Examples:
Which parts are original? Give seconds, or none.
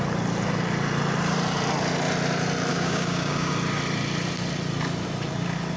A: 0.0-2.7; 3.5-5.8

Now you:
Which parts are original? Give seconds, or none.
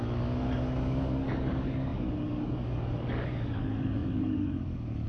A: none